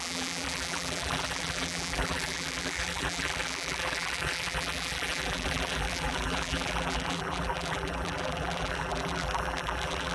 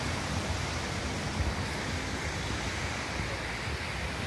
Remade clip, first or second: first